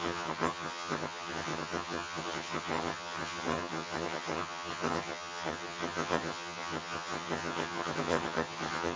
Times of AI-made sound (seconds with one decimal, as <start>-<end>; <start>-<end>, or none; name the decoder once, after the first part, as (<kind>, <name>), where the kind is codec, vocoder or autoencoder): 0.0-9.0 (vocoder, HiFi-GAN)